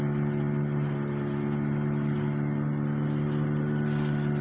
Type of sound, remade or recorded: recorded